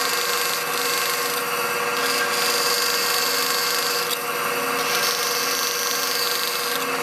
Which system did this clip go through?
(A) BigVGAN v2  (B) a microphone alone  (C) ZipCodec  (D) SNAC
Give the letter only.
B